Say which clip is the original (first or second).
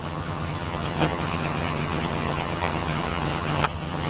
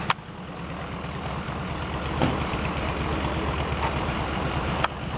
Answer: second